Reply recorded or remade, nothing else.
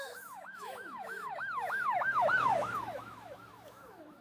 remade